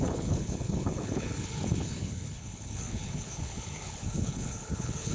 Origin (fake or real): fake